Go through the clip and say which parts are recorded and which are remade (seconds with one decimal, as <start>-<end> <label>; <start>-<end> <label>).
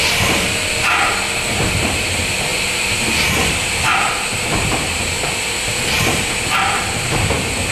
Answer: 0.0-2.5 recorded; 2.5-3.1 remade; 3.1-7.7 recorded